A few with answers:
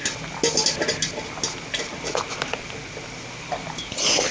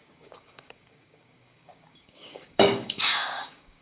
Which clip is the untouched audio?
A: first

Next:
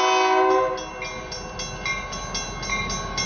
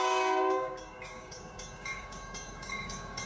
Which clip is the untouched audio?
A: first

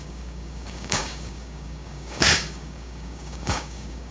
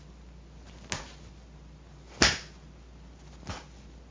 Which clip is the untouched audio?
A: second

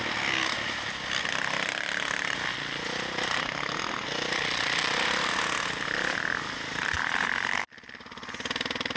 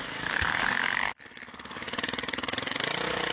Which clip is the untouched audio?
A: first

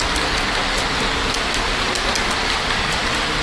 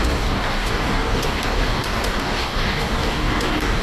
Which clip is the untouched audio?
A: first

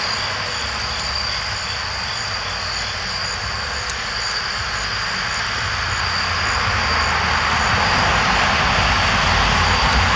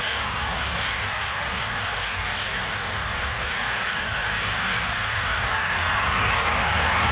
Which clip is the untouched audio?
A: first